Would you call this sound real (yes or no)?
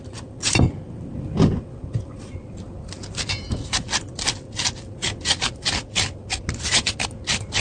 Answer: yes